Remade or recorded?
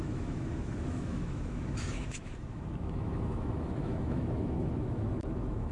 remade